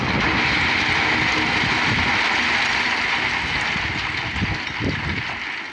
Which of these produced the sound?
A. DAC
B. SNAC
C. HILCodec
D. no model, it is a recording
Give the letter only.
D